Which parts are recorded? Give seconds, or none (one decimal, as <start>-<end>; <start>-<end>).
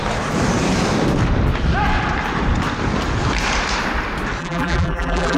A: 0.0-4.4